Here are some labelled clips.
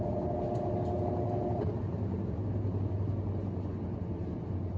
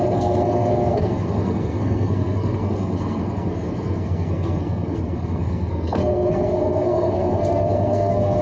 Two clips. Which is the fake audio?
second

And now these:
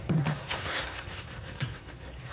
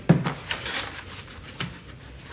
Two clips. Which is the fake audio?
first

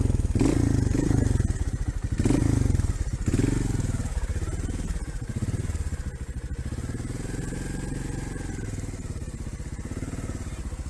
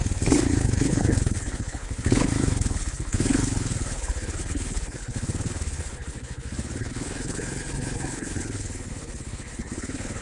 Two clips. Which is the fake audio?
second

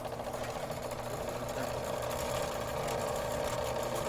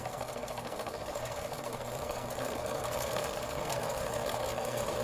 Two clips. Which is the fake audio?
second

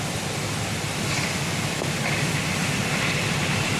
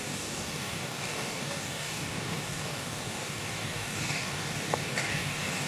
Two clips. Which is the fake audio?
second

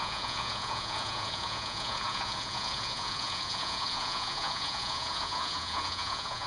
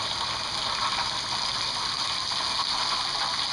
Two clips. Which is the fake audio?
first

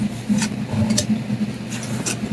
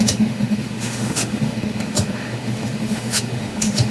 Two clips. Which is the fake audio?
second